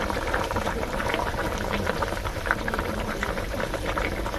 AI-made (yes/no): yes